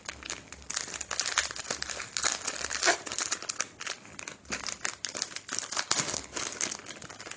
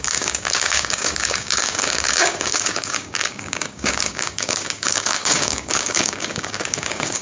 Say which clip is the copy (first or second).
second